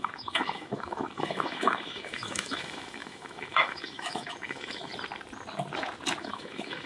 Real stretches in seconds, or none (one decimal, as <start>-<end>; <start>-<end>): 4.9-6.2